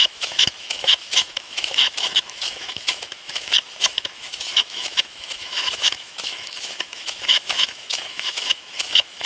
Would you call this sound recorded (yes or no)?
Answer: no